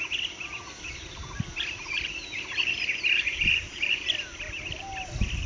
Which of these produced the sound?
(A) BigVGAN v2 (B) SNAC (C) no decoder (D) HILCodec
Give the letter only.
C